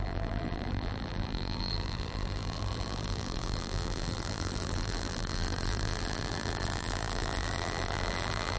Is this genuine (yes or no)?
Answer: no